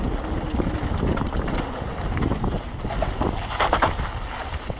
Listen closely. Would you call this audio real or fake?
real